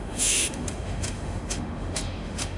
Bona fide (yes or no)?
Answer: no